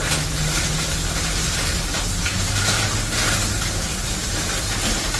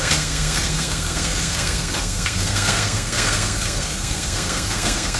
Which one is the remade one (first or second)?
second